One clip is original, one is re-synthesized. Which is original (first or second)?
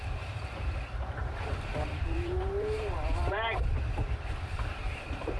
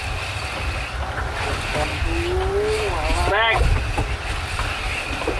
second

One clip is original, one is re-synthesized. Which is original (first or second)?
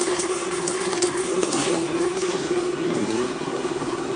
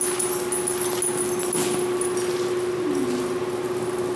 second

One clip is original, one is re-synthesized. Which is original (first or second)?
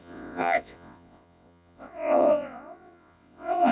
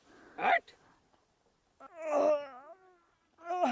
second